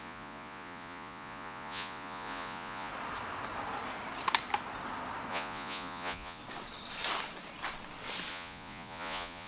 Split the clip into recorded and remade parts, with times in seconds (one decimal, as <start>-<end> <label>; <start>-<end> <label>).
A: 0.0-2.9 remade; 2.9-5.3 recorded; 5.3-6.4 remade; 6.4-8.3 recorded; 8.3-9.5 remade